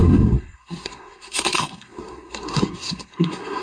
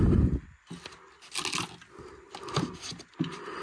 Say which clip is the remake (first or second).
first